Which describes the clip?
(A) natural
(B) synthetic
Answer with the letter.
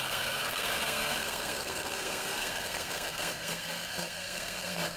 B